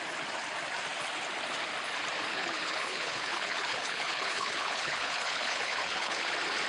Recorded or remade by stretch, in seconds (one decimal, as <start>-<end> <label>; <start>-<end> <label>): 0.0-2.3 recorded; 2.3-6.3 remade; 6.3-6.7 recorded